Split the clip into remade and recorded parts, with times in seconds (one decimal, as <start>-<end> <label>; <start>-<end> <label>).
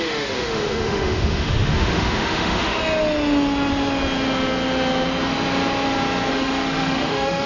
0.0-2.8 remade; 2.8-6.3 recorded; 6.3-7.5 remade